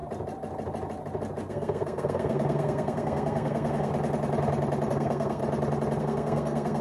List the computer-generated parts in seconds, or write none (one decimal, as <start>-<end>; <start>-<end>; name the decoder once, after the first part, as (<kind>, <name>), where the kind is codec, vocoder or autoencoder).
1.5-3.9 (codec, SNAC); 4.9-5.4; 6.0-6.8